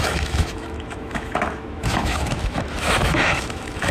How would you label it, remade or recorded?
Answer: remade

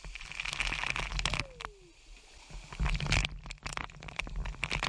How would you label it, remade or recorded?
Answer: recorded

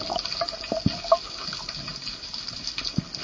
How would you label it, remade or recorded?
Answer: recorded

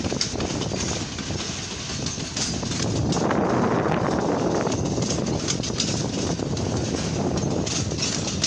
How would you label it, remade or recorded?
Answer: recorded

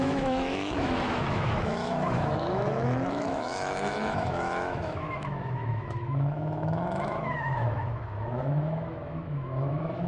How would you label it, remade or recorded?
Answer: remade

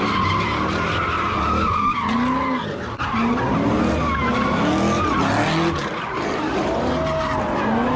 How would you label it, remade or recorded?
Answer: recorded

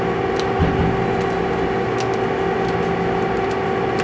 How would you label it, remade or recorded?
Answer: recorded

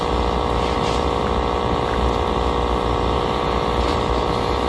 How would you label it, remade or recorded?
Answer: recorded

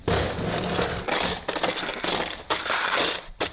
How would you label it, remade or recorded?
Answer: recorded